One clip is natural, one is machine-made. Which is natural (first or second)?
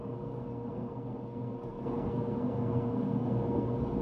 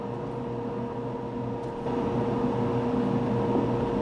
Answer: second